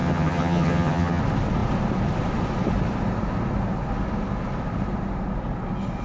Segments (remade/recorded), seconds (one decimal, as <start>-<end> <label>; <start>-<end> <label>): 0.0-1.2 remade; 1.2-6.0 recorded

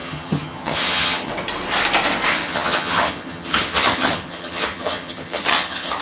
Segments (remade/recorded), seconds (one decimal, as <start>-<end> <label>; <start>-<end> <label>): 0.0-1.3 remade; 1.3-2.3 recorded; 2.3-6.0 remade

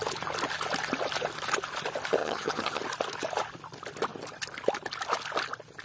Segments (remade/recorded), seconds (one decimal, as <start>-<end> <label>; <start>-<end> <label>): 0.0-2.2 recorded; 2.2-2.8 remade; 2.8-5.8 recorded

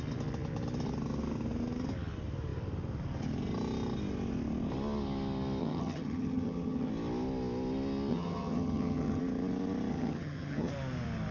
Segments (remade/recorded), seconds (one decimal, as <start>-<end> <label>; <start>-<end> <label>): 0.0-5.6 recorded; 5.6-6.9 remade; 6.9-8.1 recorded; 8.1-9.2 remade; 9.2-9.9 recorded; 9.9-10.7 remade; 10.7-11.3 recorded